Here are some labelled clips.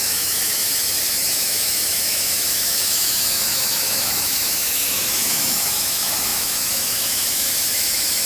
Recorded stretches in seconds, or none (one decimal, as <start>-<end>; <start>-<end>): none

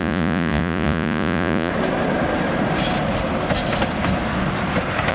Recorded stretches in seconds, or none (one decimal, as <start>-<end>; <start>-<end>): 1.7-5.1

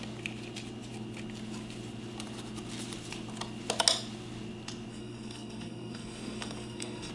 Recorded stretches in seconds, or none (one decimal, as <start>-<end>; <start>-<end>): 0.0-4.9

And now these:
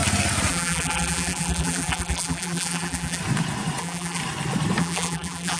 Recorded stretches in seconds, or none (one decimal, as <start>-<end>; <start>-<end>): 0.0-0.5; 3.2-3.8; 4.2-4.8